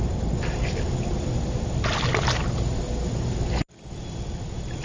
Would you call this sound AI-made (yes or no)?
no